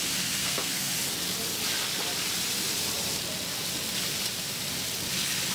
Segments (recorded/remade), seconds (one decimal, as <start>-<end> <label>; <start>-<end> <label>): 0.0-0.4 recorded; 0.4-0.9 remade; 0.9-5.5 recorded